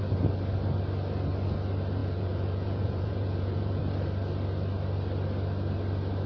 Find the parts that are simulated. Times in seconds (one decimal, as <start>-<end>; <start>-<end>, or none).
2.0-3.8